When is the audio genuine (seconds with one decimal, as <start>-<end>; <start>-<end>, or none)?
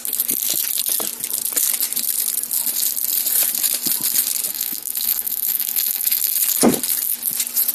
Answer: 0.0-4.5; 6.3-7.7